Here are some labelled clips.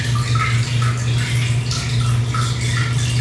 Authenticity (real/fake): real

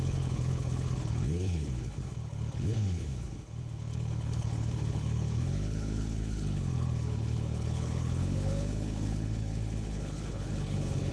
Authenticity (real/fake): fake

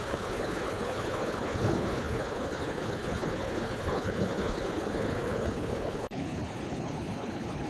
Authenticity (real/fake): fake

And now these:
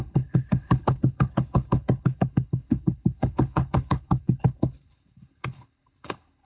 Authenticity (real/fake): fake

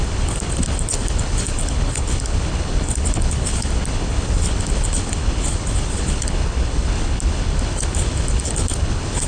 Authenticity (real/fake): fake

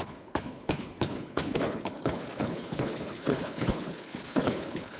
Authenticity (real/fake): fake